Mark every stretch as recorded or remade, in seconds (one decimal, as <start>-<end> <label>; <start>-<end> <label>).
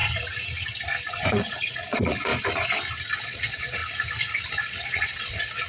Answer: 0.0-1.1 recorded; 1.1-2.3 remade; 2.3-3.2 recorded; 3.2-3.8 remade; 3.8-4.5 recorded; 4.5-5.7 remade